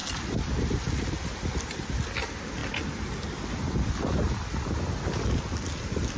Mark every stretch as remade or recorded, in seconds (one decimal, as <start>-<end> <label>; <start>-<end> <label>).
0.0-6.2 recorded